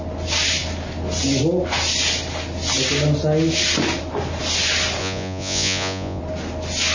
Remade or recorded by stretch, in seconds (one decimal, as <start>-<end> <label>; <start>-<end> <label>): 0.0-5.0 recorded; 5.0-6.2 remade; 6.2-6.9 recorded